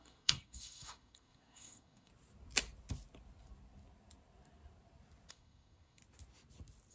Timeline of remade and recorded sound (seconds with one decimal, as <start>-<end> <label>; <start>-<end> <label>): 0.0-2.1 remade; 2.1-5.3 recorded; 5.3-6.0 remade; 6.0-6.9 recorded